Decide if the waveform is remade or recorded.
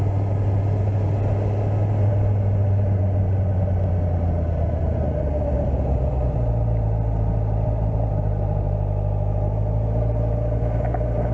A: recorded